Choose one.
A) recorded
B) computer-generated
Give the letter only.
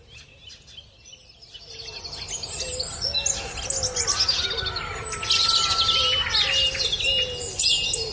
A